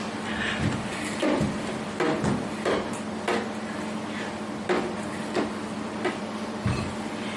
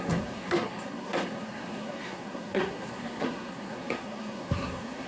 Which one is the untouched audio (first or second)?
first